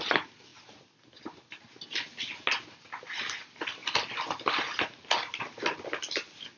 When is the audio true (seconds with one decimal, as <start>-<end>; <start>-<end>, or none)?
0.0-6.6